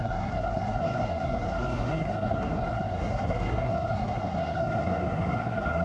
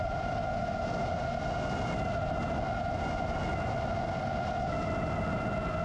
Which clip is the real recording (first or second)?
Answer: second